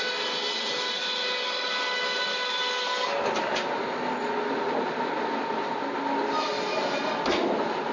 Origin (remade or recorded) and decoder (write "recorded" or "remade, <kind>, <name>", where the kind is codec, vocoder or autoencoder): recorded